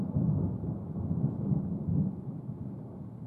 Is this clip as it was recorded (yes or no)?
yes